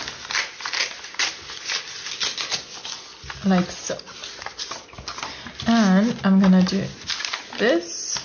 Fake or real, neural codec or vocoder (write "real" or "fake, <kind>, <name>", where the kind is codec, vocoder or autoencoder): real